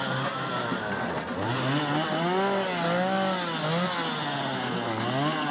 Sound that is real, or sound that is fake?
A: real